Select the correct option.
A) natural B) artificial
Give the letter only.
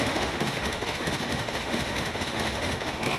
B